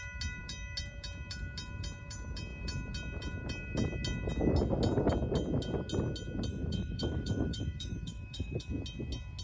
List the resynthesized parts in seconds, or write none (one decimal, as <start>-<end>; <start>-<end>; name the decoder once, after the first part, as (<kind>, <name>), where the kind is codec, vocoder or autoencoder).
6.5-8.7 (autoencoder, DAC-VAE)